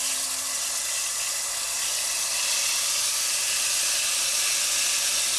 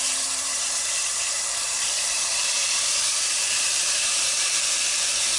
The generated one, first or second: second